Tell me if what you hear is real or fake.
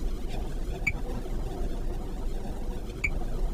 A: real